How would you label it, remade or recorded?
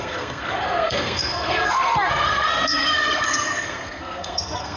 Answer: remade